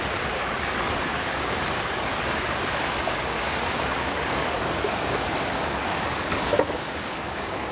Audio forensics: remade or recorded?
remade